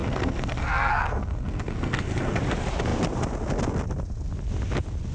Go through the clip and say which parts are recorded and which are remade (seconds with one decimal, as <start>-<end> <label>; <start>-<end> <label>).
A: 0.0-2.4 remade; 2.4-5.1 recorded